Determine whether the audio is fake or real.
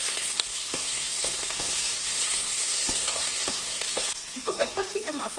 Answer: fake